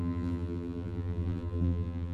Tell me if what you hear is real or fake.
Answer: fake